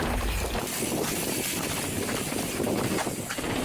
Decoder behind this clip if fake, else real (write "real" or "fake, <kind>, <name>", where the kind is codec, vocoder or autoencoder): real